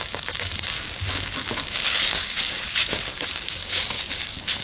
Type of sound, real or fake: fake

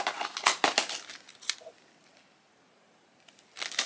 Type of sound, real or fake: real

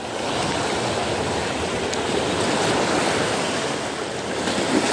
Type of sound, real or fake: real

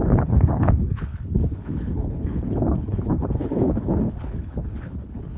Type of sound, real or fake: fake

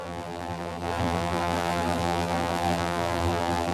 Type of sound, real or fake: fake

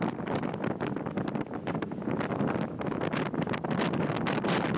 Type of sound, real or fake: real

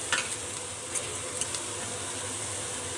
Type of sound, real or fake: real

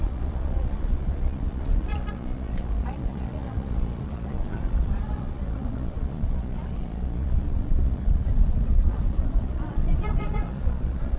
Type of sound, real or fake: fake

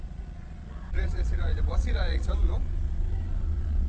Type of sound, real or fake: fake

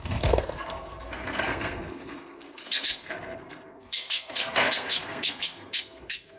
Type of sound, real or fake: fake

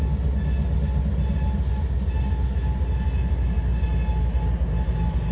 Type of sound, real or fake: real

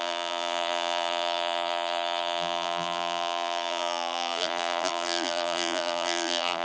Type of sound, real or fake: fake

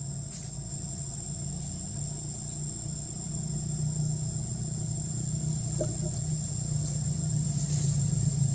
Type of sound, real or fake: real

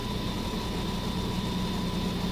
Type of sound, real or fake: real